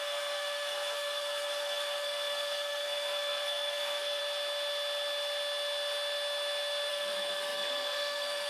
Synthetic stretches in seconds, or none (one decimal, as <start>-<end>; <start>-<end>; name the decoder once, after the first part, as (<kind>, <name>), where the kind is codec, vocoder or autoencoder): 0.0-4.2 (codec, SNAC); 6.9-8.5